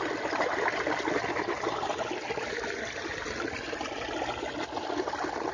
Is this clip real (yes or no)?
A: yes